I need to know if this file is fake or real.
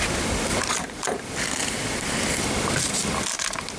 real